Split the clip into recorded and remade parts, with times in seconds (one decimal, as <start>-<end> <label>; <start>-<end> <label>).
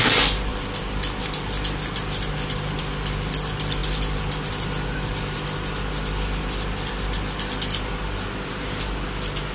0.0-9.5 recorded